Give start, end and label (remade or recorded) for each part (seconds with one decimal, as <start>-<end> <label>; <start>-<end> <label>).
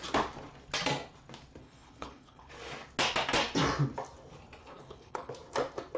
0.0-1.6 recorded; 1.6-2.5 remade; 2.5-4.6 recorded; 4.6-5.3 remade; 5.3-6.0 recorded